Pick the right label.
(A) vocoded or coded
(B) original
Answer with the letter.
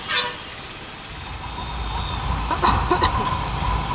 B